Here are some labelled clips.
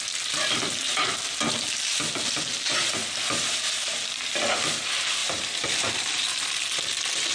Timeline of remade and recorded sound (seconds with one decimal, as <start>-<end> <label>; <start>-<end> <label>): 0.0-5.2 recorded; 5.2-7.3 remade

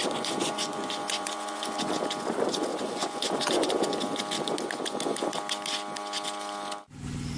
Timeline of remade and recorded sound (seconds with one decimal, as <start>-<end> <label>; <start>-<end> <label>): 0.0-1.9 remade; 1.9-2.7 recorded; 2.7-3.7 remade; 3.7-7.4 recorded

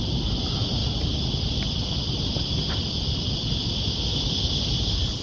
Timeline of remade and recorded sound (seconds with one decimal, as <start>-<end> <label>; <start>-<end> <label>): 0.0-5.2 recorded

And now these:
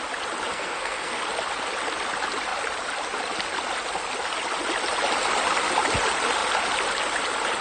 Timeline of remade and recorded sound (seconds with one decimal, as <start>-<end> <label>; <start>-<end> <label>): 0.0-0.5 recorded; 0.5-1.2 remade; 1.2-7.6 recorded

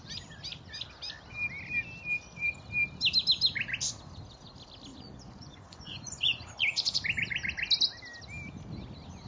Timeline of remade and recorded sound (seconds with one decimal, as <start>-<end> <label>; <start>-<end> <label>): 0.0-4.9 recorded; 4.9-6.5 remade; 6.5-9.3 recorded

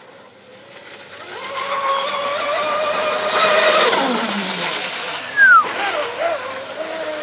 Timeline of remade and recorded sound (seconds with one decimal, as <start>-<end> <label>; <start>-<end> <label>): 0.0-7.2 remade

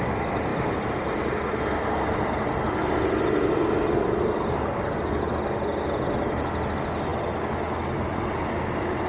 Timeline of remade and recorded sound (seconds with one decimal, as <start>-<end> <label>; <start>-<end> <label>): 0.0-9.1 recorded

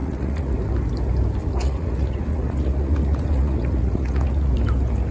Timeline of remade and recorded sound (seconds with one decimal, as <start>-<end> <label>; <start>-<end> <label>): 0.0-0.5 remade; 0.5-1.4 recorded; 1.4-4.5 remade; 4.5-5.1 recorded